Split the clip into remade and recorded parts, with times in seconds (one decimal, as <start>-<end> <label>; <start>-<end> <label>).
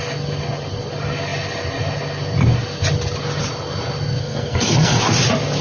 0.0-4.2 recorded; 4.2-5.0 remade; 5.0-5.6 recorded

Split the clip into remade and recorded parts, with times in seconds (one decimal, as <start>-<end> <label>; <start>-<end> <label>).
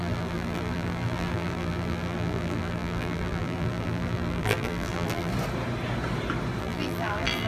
0.0-5.3 remade; 5.3-6.6 recorded; 6.6-7.5 remade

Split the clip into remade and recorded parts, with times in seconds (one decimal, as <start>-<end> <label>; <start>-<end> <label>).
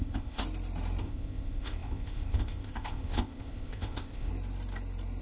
0.0-0.4 remade; 0.4-1.0 recorded; 1.0-4.3 remade; 4.3-5.2 recorded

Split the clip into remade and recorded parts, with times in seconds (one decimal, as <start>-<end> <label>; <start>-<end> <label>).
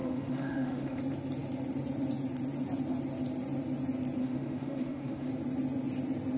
0.0-1.0 remade; 1.0-4.2 recorded; 4.2-5.3 remade; 5.3-6.4 recorded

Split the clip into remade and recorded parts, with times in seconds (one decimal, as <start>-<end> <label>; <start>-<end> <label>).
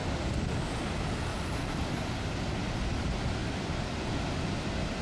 0.0-1.3 recorded; 1.3-2.6 remade; 2.6-5.0 recorded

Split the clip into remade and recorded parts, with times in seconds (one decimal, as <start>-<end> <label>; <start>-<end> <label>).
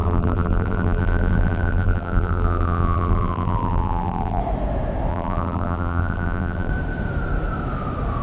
0.0-4.4 remade; 4.4-5.1 recorded; 5.1-6.7 remade; 6.7-8.2 recorded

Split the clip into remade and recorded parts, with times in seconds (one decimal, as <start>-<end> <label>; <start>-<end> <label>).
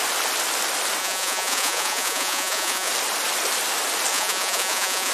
0.0-1.0 recorded; 1.0-2.9 remade; 2.9-4.1 recorded; 4.1-5.1 remade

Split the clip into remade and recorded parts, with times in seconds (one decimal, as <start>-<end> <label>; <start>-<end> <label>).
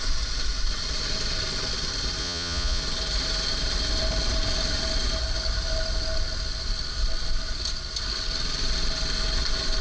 0.0-2.2 recorded; 2.2-2.8 remade; 2.8-9.8 recorded